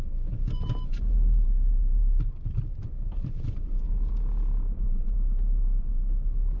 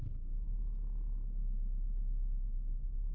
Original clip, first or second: second